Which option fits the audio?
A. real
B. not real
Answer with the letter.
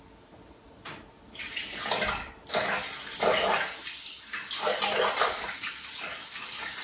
A